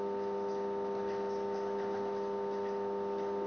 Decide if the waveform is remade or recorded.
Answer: recorded